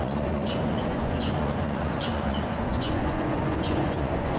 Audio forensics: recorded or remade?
remade